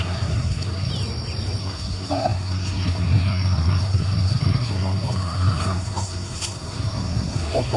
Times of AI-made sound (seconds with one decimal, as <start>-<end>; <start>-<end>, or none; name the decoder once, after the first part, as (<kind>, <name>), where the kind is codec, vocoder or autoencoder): 0.0-0.9 (codec, SNAC); 1.6-7.8